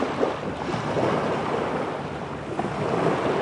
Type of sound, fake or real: real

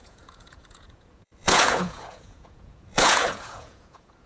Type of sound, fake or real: fake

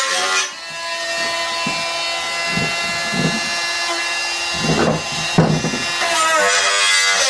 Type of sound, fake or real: real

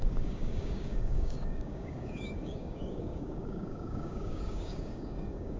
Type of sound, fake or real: fake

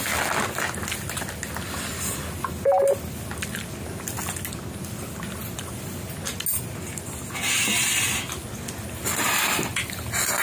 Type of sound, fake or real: real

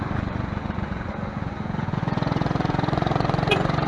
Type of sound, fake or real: fake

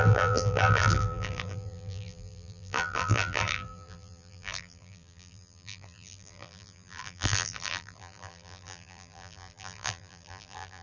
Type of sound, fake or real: fake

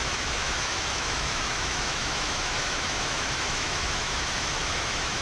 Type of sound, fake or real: fake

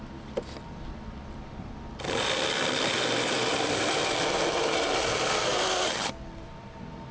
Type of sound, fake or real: fake